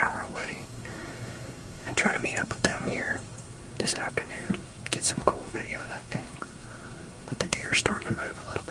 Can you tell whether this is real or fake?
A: fake